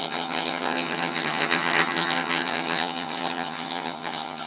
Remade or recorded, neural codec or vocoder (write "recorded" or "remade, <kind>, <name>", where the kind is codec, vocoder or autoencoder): remade, vocoder, HiFi-GAN